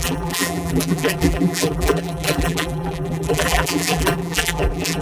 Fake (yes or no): yes